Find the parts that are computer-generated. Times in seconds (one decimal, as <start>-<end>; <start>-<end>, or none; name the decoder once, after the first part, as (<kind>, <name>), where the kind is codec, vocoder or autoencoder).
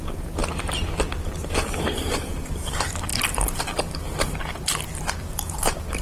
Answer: 0.0-0.4 (vocoder, BigVGAN v2); 1.8-4.6; 5.2-6.0